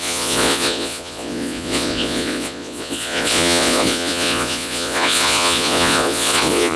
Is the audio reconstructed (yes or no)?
yes